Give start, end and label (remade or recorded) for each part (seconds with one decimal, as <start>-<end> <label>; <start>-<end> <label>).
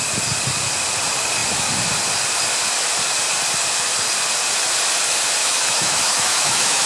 0.0-5.4 recorded; 5.4-6.9 remade